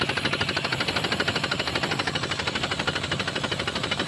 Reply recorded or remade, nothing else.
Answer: recorded